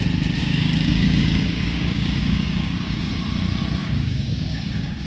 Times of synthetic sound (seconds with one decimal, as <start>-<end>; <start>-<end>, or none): 0.4-3.1; 3.8-5.1